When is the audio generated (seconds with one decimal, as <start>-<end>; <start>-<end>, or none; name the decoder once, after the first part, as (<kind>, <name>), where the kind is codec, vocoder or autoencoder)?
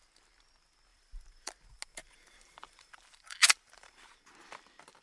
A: 0.9-1.5 (vocoder, BigVGAN v2); 2.0-4.3